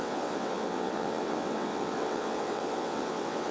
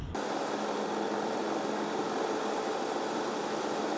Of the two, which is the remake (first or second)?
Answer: first